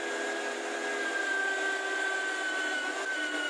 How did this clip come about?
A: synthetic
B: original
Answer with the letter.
B